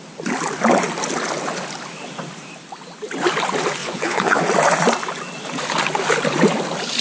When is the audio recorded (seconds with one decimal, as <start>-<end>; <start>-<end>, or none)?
0.0-3.8; 4.4-7.0